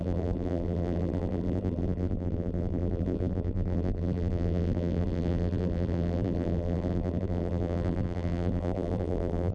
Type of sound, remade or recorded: remade